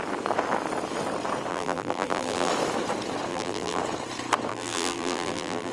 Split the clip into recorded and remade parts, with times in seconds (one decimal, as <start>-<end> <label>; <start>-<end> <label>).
0.0-1.5 recorded; 1.5-2.5 remade; 2.5-3.3 recorded; 3.3-3.8 remade; 3.8-4.5 recorded; 4.5-5.7 remade

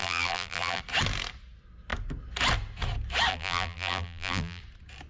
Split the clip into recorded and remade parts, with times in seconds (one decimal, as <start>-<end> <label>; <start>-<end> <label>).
0.0-0.8 remade; 0.8-3.3 recorded; 3.3-4.6 remade; 4.6-5.1 recorded

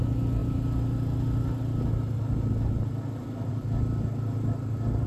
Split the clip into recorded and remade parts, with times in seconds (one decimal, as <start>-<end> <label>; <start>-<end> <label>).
0.0-5.1 recorded